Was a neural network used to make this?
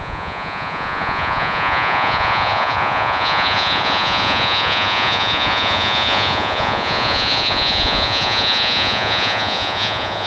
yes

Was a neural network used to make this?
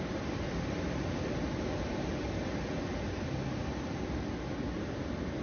no